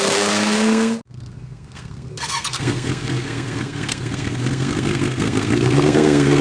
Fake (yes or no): yes